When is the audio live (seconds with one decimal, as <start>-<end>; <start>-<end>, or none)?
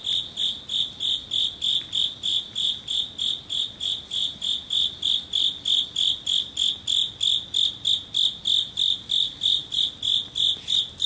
0.0-7.0; 7.9-11.1